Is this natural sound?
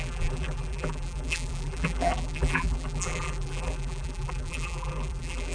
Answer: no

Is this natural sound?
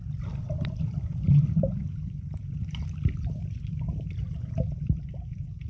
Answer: no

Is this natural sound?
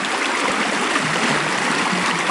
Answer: yes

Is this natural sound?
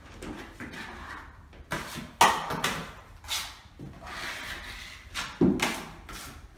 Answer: yes